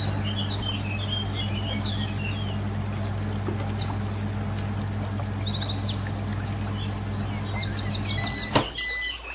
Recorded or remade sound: recorded